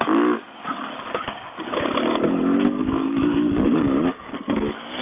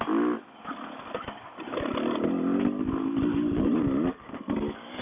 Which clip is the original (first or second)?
second